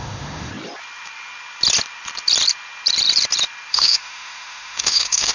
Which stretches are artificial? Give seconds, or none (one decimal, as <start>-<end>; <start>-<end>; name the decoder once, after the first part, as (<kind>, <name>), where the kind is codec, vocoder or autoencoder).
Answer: 0.0-0.5 (autoencoder, DAC-VAE); 3.7-5.3